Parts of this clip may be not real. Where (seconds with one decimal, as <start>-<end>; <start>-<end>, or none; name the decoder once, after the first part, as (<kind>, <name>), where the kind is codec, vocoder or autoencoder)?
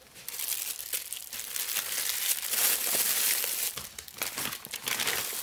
none